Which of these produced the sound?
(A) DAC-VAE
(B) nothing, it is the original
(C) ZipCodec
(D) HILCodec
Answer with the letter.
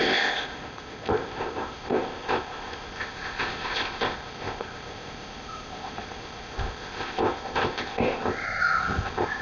C